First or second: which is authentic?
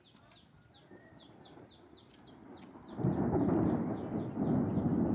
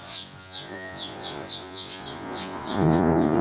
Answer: first